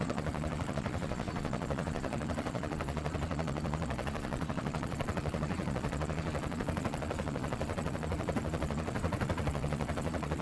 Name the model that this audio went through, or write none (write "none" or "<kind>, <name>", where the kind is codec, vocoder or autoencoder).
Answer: vocoder, Vocos